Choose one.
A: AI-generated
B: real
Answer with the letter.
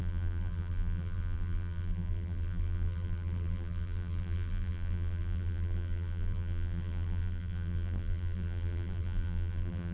A